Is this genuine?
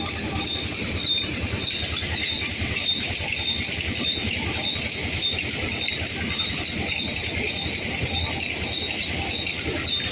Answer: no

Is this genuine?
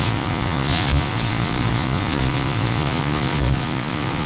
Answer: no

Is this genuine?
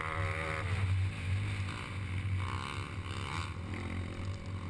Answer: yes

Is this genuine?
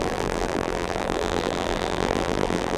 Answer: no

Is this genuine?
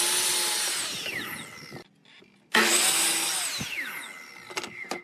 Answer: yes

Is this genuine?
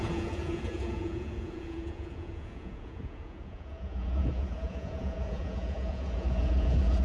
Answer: no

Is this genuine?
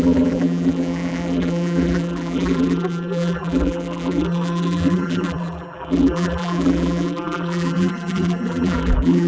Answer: no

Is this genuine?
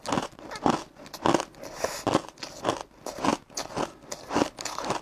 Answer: yes